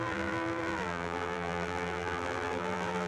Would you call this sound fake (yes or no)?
yes